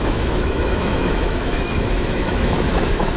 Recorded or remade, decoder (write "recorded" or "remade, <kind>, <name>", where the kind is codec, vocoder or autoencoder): remade, autoencoder, DAC-VAE